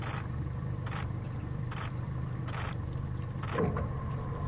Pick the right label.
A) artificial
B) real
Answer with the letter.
B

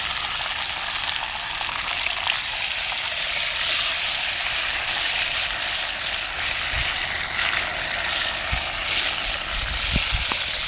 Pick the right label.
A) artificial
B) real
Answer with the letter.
B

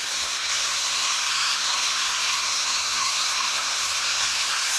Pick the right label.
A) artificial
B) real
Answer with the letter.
A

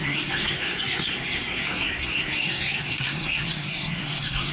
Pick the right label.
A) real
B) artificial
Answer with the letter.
B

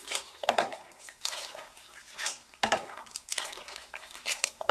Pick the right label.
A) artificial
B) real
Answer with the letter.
A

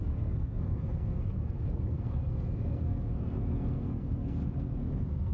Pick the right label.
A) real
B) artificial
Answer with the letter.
B